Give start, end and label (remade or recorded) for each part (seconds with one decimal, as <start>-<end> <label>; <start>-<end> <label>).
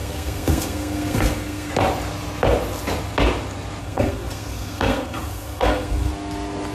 0.0-1.7 remade; 1.7-3.8 recorded; 3.8-6.1 remade; 6.1-6.7 recorded